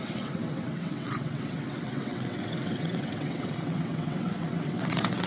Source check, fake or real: fake